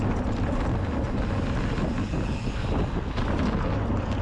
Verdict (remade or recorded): recorded